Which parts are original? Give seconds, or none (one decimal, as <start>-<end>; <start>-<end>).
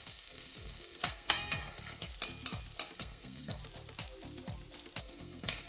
2.1-3.0; 3.6-5.0